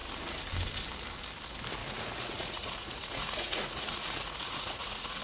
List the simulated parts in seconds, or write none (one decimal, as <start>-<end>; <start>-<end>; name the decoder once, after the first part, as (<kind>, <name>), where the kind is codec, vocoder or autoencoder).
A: 1.8-5.2 (vocoder, Vocos)